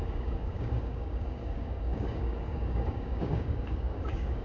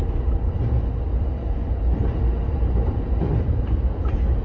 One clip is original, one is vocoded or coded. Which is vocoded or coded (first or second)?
first